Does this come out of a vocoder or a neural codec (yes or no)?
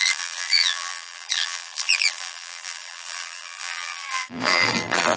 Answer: yes